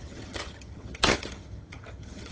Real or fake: fake